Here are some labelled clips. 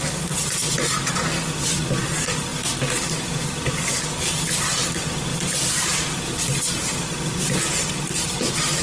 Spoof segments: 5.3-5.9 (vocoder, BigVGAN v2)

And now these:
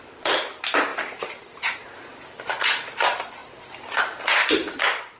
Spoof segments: 0.9-2.0 (vocoder, BigVGAN v2)

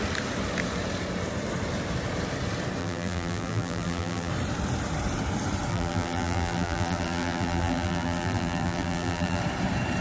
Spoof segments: 2.8-4.3 (vocoder, BigVGAN v2); 5.7-9.4

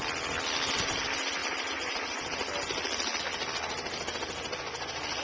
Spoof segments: none

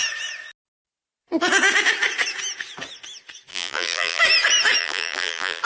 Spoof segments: 3.5-4.2 (vocoder, BigVGAN v2); 4.8-5.6